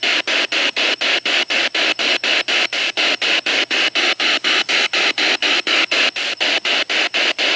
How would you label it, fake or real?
real